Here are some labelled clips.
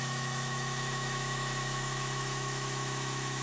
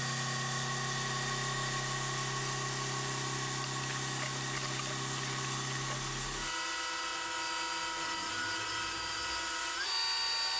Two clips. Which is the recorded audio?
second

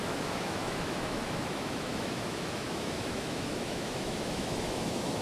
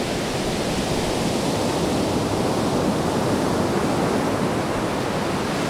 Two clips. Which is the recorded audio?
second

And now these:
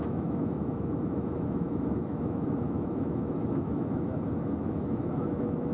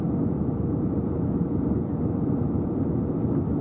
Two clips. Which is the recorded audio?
second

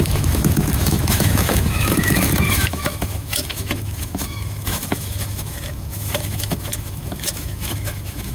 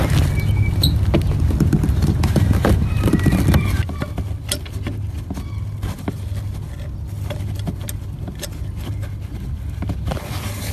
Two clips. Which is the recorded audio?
second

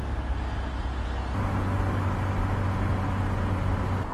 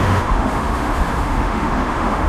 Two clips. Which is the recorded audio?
first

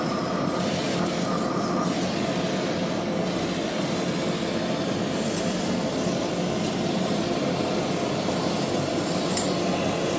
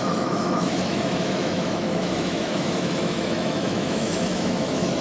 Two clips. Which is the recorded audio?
first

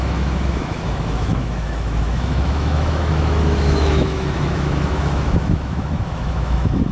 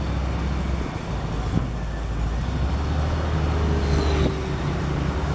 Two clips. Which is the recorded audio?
second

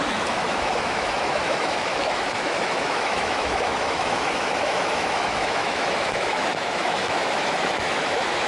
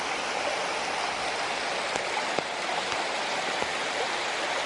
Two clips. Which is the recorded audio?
second